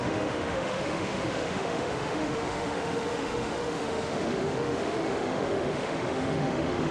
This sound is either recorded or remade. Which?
remade